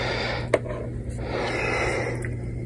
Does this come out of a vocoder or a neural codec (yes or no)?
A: no